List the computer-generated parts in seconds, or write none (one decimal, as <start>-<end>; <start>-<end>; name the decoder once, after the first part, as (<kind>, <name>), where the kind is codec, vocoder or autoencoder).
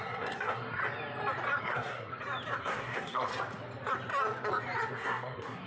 0.0-0.8 (codec, SNAC); 1.6-2.1; 2.6-3.3; 4.9-5.7